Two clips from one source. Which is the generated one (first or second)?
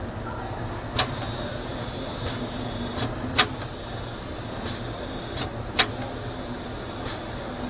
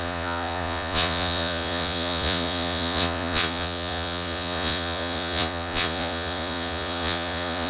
second